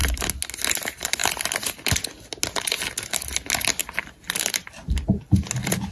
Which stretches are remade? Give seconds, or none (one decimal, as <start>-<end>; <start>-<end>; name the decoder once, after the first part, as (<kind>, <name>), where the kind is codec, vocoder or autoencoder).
none